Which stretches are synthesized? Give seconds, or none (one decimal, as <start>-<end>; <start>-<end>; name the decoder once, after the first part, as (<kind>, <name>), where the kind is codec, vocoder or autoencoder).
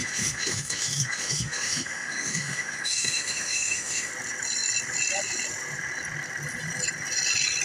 0.0-4.1 (autoencoder, DAC-VAE)